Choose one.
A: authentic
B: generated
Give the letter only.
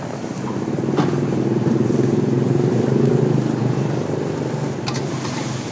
B